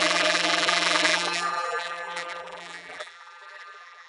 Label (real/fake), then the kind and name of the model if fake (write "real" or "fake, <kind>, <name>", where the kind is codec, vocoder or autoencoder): fake, vocoder, BigVGAN v2